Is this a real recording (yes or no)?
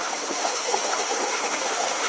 no